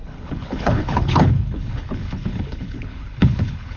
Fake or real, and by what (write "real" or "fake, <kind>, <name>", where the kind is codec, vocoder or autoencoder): fake, codec, HILCodec